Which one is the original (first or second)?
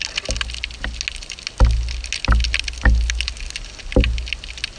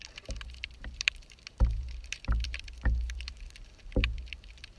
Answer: first